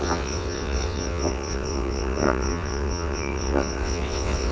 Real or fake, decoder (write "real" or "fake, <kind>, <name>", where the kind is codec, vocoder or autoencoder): fake, vocoder, WaveNeXt